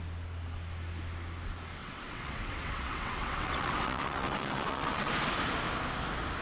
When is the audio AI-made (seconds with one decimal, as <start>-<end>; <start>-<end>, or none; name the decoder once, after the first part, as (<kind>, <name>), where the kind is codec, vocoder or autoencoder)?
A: 1.8-5.1 (vocoder, WaveNeXt)